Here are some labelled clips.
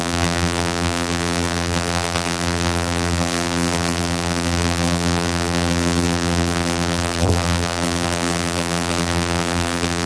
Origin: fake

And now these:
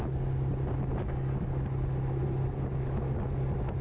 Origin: real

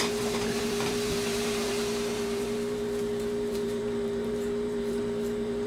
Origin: fake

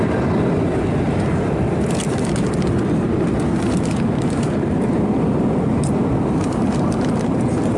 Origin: fake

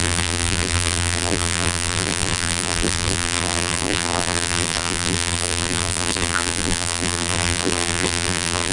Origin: fake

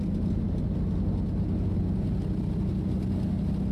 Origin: real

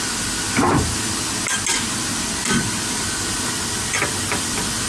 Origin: real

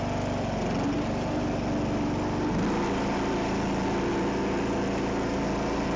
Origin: real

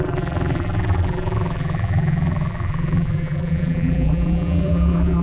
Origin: fake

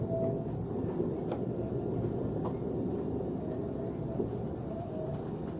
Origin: real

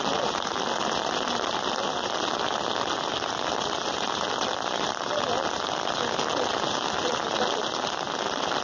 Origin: real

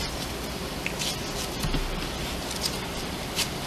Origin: real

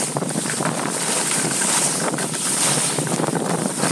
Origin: real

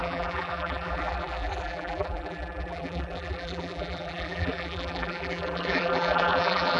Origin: fake